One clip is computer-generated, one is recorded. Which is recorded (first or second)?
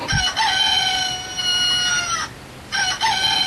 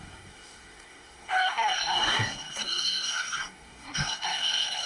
first